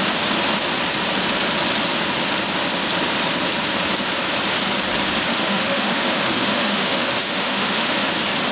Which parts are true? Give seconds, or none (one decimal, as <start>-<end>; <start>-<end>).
0.0-5.3; 8.1-8.5